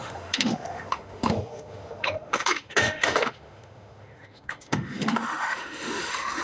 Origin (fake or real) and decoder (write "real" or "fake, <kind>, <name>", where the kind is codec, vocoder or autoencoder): fake, autoencoder, DAC-VAE